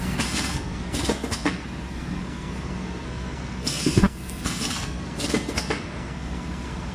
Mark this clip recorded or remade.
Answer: remade